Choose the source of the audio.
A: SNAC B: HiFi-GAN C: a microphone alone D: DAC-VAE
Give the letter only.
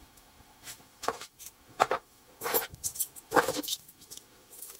D